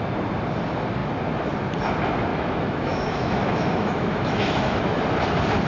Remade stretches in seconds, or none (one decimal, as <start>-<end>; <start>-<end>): 2.3-5.0